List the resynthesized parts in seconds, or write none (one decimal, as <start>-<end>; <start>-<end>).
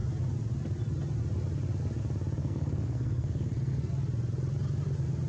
2.4-3.9